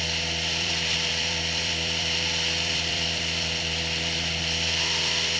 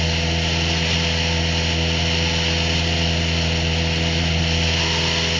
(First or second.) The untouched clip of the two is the second